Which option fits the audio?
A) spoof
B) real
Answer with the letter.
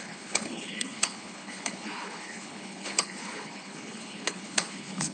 A